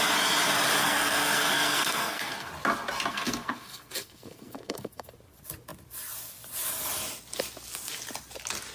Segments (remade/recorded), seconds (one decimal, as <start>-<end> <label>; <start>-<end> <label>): 0.0-0.8 recorded; 0.8-2.5 remade; 2.5-3.1 recorded; 3.1-5.1 remade; 5.1-8.7 recorded